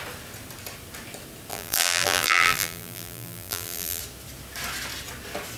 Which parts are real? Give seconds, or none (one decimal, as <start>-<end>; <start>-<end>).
0.0-1.5; 4.0-5.6